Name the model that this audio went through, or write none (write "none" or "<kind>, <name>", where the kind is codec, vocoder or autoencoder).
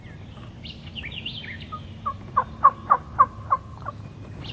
none